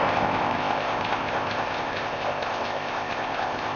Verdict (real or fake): fake